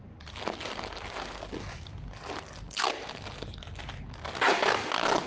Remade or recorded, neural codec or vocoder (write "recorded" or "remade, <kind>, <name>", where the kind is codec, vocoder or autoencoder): recorded